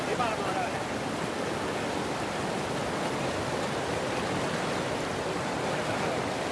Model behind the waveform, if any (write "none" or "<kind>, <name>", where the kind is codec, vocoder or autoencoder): none